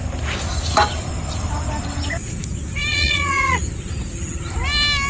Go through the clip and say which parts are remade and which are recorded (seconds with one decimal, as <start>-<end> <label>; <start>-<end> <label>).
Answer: 0.0-2.9 recorded; 2.9-3.6 remade; 3.6-5.1 recorded